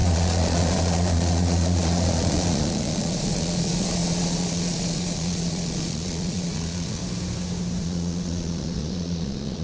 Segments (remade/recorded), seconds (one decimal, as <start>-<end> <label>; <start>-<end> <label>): 0.0-7.0 remade; 7.0-7.8 recorded; 7.8-9.6 remade